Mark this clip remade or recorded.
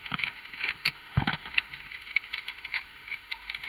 remade